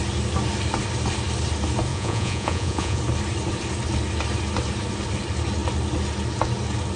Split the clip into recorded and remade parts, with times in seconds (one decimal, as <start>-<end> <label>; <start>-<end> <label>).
0.0-1.9 recorded; 1.9-3.0 remade; 3.0-7.0 recorded